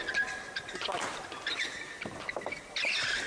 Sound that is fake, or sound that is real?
real